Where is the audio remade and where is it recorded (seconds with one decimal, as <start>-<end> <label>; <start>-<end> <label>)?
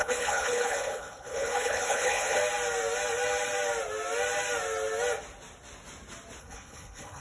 0.0-2.4 remade; 2.4-6.4 recorded; 6.4-7.2 remade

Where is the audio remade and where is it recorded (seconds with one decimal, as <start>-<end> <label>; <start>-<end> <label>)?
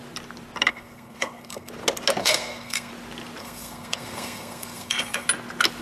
0.0-0.7 recorded; 0.7-1.7 remade; 1.7-2.2 recorded; 2.2-2.9 remade; 2.9-3.4 recorded; 3.4-5.3 remade; 5.3-5.8 recorded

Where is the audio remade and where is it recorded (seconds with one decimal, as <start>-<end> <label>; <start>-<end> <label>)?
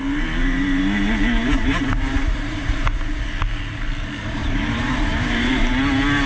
0.0-1.4 recorded; 1.4-3.2 remade; 3.2-4.4 recorded; 4.4-5.7 remade; 5.7-6.3 recorded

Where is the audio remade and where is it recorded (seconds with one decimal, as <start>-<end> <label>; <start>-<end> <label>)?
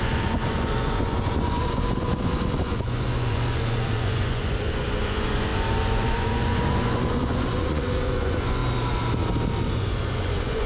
0.0-8.6 remade; 8.6-9.7 recorded; 9.7-10.7 remade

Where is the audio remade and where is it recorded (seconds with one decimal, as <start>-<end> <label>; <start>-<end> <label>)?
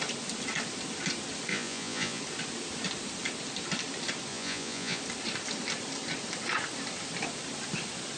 0.0-1.5 recorded; 1.5-2.2 remade; 2.2-4.3 recorded; 4.3-5.0 remade; 5.0-8.2 recorded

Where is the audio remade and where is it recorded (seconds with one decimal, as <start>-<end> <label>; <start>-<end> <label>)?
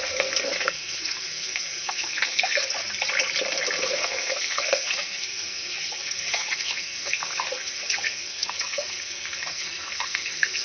0.0-2.6 remade; 2.6-3.8 recorded; 3.8-10.6 remade